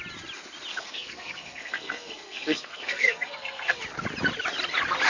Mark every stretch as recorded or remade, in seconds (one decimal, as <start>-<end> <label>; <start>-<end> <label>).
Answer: 0.0-0.7 recorded; 0.7-3.8 remade; 3.8-5.1 recorded

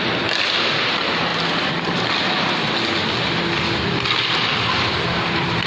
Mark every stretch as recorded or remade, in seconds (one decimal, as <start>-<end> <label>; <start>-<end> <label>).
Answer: 0.0-5.7 recorded

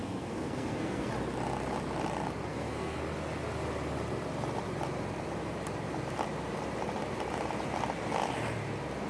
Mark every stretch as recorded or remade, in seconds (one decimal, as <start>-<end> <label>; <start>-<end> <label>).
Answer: 0.0-1.1 remade; 1.1-2.5 recorded; 2.5-3.0 remade; 3.0-9.1 recorded

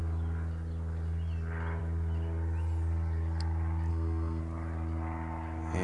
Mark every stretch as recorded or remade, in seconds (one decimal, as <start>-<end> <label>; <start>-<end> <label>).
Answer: 0.0-3.9 recorded; 3.9-4.4 remade; 4.4-5.8 recorded

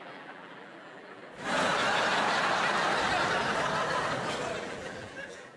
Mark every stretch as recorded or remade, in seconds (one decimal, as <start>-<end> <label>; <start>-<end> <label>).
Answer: 0.0-1.2 remade; 1.2-4.6 recorded; 4.6-5.6 remade

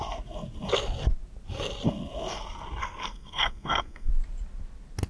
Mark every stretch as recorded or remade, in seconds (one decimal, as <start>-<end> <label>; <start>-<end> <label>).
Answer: 0.0-2.8 recorded; 2.8-4.1 remade; 4.1-5.1 recorded